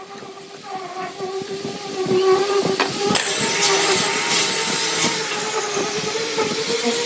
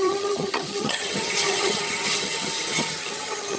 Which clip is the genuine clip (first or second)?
first